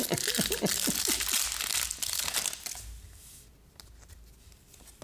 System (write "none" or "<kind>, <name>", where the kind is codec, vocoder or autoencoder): none